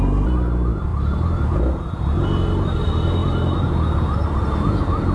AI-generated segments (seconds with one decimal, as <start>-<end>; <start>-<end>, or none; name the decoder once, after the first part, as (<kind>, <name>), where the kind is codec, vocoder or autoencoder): 0.9-2.2 (vocoder, BigVGAN v2); 3.2-4.4